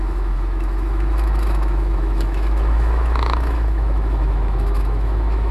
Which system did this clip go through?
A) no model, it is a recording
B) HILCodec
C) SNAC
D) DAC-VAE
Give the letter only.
D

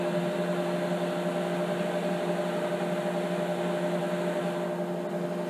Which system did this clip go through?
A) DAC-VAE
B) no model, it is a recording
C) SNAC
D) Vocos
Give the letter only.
B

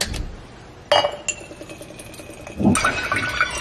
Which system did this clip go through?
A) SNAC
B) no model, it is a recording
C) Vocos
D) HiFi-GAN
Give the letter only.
B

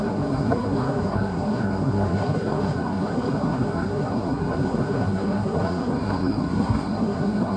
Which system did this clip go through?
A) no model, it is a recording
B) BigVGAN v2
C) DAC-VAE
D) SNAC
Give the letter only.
D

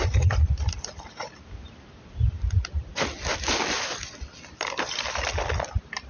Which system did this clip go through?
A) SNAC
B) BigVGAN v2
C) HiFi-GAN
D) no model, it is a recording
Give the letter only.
D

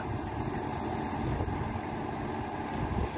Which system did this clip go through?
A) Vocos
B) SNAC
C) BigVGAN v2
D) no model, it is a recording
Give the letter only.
D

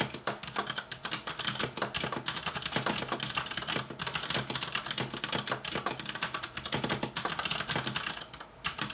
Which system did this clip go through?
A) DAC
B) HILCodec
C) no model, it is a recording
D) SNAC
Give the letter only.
C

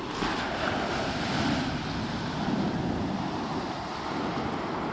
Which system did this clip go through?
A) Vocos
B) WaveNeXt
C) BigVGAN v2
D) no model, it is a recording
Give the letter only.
D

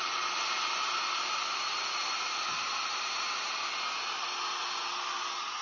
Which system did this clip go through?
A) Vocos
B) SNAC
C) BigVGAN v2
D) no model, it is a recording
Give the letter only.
D